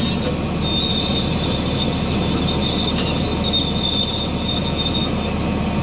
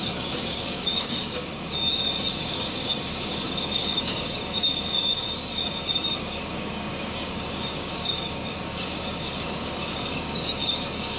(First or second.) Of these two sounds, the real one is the first